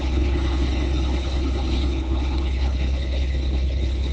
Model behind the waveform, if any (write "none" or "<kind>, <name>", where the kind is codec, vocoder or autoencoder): codec, HILCodec